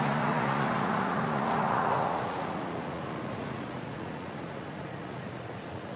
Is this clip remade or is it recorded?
remade